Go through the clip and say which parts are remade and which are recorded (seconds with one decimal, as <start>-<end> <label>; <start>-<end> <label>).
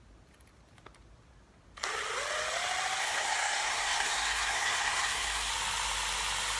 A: 0.0-3.0 recorded; 3.0-5.5 remade; 5.5-6.6 recorded